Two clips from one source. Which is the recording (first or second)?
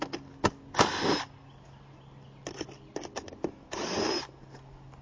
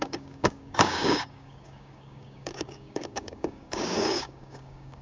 first